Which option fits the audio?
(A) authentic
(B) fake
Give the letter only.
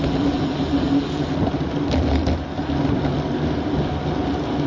A